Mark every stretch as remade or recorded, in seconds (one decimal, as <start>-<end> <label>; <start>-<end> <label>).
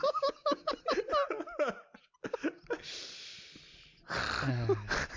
0.0-0.7 remade; 0.7-5.2 recorded